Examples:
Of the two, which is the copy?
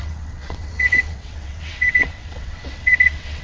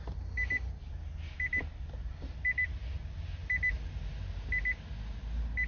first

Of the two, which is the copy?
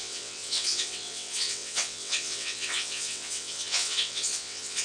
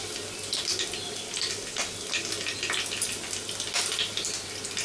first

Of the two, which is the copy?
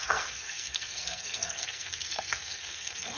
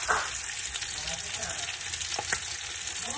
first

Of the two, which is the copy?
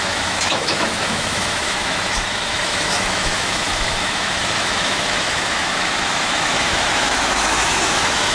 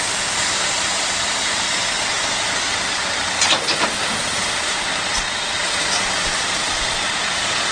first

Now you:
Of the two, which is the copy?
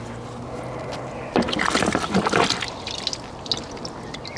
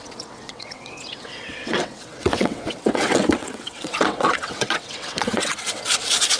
second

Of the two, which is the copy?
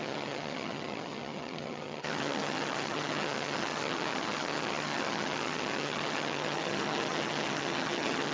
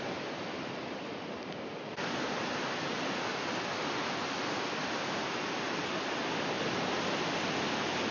first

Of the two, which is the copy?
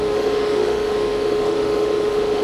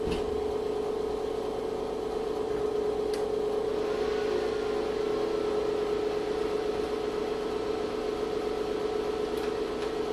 first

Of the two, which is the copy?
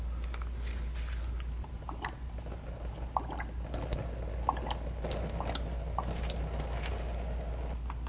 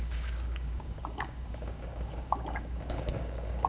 second